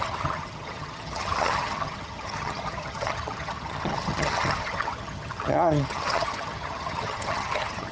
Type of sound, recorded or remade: remade